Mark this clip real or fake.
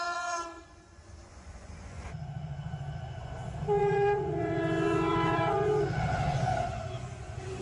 fake